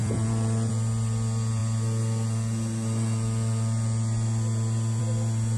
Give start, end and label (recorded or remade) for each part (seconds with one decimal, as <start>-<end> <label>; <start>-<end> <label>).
0.0-0.7 remade; 0.7-5.6 recorded